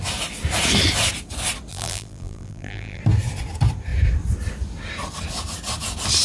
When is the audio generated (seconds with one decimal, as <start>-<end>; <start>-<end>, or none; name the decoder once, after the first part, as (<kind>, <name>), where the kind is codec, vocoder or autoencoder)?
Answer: 1.7-3.0 (vocoder, BigVGAN v2)